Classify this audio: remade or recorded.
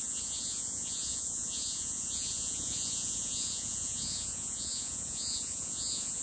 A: remade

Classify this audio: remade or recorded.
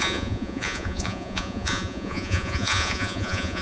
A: remade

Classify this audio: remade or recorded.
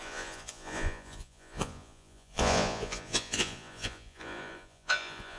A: remade